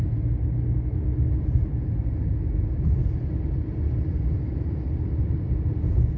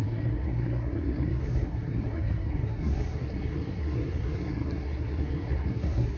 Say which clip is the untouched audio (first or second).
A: first